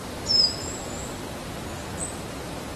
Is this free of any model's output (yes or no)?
no